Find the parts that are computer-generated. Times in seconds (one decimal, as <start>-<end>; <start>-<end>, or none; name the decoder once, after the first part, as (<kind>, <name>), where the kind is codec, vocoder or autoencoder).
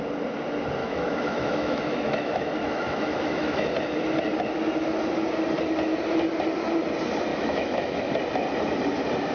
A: 0.8-3.7 (autoencoder, DAC-VAE); 7.3-8.1